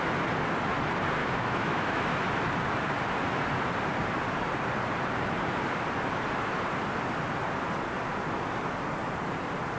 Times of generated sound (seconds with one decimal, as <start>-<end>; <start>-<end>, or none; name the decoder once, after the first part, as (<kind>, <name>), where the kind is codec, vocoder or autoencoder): 1.2-2.4 (autoencoder, DAC-VAE)